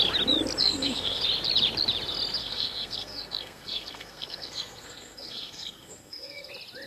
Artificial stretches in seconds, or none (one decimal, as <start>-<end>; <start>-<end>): 0.6-1.2; 2.4-6.5